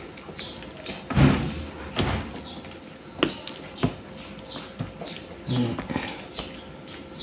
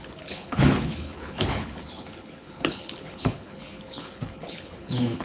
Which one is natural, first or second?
first